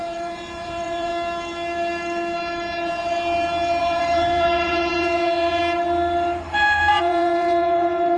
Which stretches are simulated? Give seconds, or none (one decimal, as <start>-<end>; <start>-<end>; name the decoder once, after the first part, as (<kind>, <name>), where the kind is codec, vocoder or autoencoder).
0.0-1.1 (vocoder, Vocos); 3.8-5.6; 6.9-8.2